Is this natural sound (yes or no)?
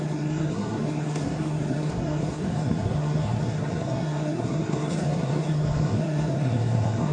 no